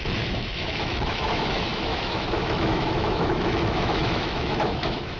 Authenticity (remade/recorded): remade